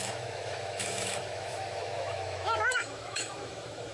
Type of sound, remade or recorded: remade